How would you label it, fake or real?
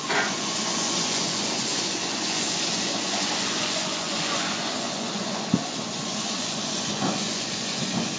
fake